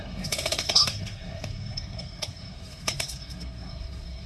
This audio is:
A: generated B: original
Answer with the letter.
A